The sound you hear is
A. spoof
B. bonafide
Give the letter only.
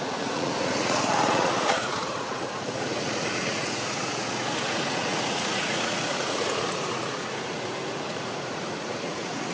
A